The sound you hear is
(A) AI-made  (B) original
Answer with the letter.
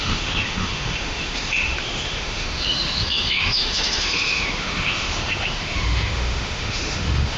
A